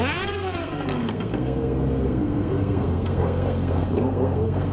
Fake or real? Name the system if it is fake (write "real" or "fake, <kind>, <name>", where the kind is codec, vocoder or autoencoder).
fake, codec, SNAC